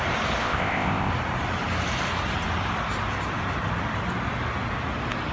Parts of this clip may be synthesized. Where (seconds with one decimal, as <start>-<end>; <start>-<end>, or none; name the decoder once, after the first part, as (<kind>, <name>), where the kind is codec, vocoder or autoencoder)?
0.4-1.1 (codec, ZipCodec)